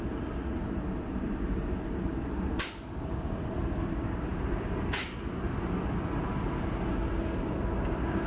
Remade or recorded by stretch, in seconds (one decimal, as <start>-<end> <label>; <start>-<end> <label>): 0.0-8.3 recorded